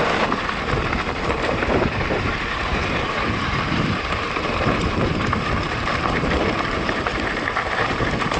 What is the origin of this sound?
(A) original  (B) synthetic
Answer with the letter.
B